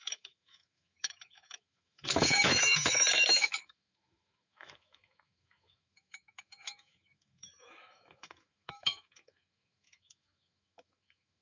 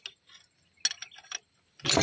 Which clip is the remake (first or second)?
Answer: first